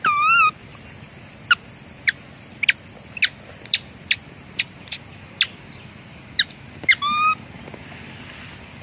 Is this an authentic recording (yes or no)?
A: yes